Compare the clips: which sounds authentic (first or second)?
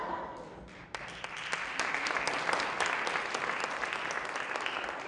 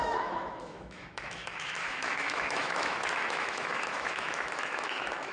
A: first